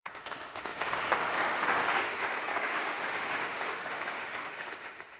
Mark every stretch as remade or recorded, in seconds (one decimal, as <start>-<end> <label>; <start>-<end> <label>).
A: 0.0-5.2 remade